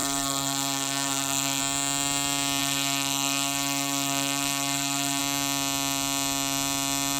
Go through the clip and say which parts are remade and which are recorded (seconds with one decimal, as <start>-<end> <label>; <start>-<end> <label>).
0.0-1.6 remade; 1.6-2.6 recorded; 2.6-5.2 remade; 5.2-7.2 recorded